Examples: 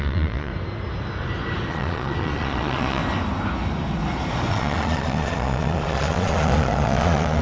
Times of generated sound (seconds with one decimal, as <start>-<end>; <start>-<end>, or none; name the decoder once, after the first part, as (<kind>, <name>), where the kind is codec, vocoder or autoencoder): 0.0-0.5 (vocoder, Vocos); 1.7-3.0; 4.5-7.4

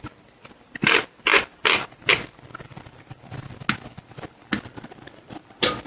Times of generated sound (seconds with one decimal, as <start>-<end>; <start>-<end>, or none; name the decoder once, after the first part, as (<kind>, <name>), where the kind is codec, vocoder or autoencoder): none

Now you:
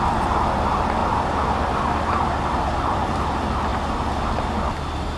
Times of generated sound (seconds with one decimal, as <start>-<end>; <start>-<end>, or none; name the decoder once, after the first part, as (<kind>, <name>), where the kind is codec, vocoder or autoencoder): none